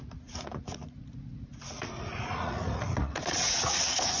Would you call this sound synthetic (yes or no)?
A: yes